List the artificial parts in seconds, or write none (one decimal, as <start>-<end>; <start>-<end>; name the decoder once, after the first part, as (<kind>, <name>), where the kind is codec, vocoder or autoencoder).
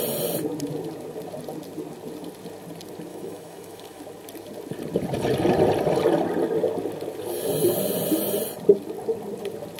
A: 3.1-4.0 (autoencoder, DAC-VAE)